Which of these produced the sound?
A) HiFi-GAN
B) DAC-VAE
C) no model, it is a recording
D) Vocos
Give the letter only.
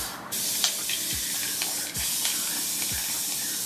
C